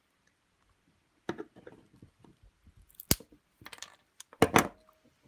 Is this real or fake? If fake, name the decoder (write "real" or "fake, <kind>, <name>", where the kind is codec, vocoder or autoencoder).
real